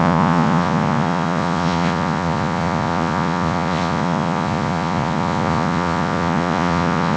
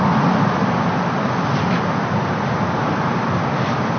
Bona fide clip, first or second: second